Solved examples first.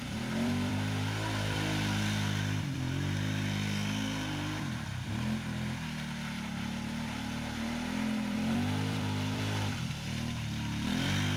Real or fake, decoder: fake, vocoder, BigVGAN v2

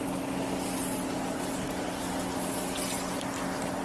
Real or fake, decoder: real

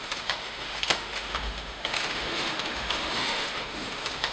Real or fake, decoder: fake, autoencoder, DAC-VAE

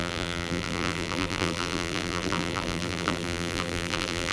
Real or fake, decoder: fake, vocoder, BigVGAN v2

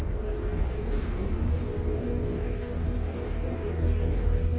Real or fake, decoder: fake, codec, DAC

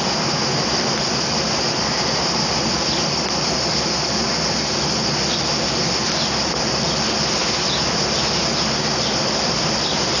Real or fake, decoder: real